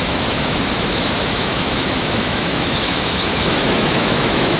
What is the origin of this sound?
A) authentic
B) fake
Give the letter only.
B